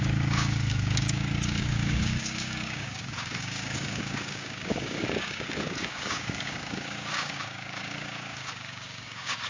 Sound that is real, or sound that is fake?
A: fake